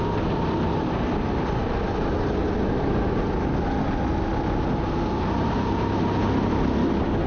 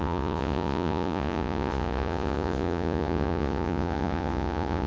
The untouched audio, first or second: first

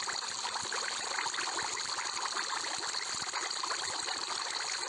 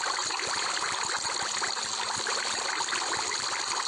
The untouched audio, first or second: first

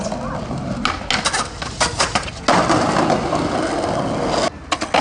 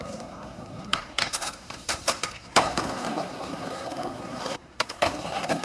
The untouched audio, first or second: first